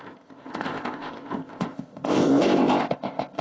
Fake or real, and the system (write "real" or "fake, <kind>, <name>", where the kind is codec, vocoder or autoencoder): fake, codec, ZipCodec